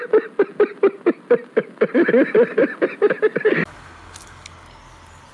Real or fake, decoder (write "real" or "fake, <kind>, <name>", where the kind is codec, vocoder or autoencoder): real